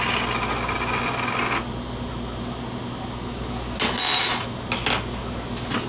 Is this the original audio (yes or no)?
yes